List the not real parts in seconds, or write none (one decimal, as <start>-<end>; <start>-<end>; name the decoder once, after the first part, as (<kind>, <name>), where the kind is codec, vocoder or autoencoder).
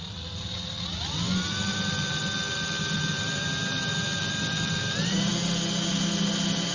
0.0-2.2 (vocoder, BigVGAN v2); 2.8-5.3; 5.9-6.7